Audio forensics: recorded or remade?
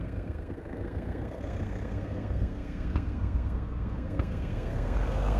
remade